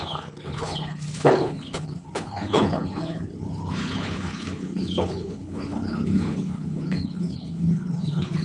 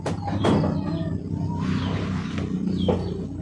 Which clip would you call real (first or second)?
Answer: second